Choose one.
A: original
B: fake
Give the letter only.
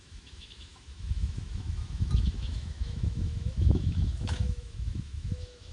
B